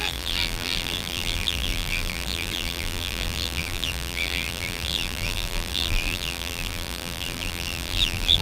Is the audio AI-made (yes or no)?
yes